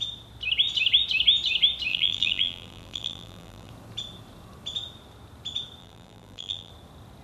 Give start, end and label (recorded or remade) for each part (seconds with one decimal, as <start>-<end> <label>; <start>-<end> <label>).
0.0-1.9 recorded; 1.9-3.7 remade; 3.7-5.8 recorded; 5.8-6.7 remade; 6.7-7.2 recorded